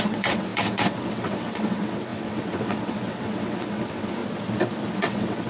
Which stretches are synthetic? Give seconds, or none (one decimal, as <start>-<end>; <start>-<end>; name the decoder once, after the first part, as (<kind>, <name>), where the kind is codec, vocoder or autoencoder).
0.0-4.2 (vocoder, WaveNeXt); 4.9-5.5